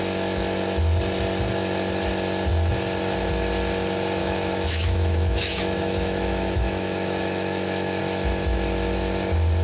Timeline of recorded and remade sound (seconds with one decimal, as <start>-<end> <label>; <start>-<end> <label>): 0.0-4.2 recorded; 4.2-8.0 remade; 8.0-9.6 recorded